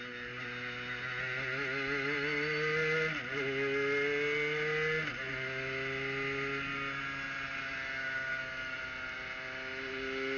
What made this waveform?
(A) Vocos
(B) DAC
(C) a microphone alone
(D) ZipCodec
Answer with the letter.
C